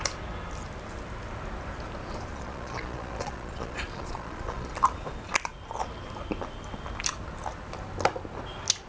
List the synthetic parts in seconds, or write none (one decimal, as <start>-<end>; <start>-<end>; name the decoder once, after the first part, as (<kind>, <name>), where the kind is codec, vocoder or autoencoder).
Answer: 2.3-4.7 (vocoder, Vocos)